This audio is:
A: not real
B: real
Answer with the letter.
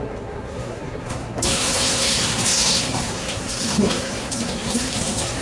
A